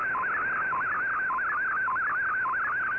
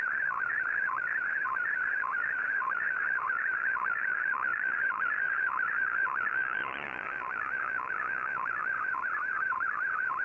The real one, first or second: first